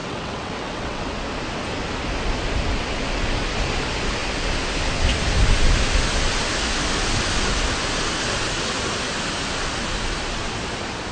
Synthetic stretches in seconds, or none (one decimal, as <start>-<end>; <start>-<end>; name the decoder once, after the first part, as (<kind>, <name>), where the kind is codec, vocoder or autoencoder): 0.0-1.1 (vocoder, WaveNeXt)